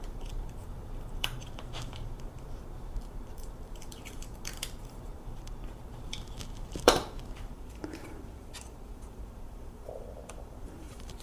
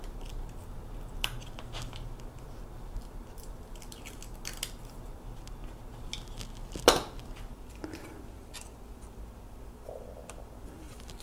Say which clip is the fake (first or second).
first